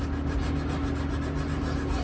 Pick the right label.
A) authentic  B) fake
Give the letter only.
A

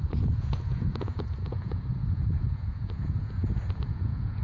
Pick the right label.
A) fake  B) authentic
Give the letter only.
A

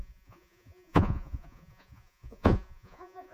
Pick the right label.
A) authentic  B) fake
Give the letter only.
B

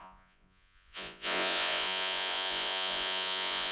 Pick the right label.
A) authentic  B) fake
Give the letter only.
B